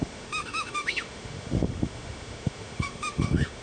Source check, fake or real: fake